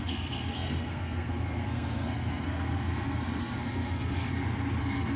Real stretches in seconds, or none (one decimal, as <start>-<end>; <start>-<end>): 4.3-4.8